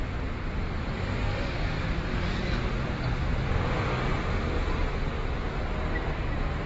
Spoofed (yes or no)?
no